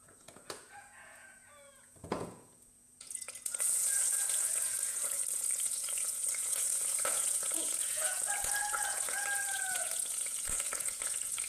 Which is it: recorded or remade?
remade